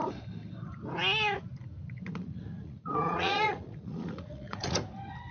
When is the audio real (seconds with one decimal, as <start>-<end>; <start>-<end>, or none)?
0.0-2.2; 4.8-5.3